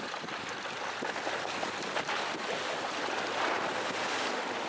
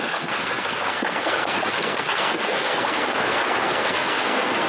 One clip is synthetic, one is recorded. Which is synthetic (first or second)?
second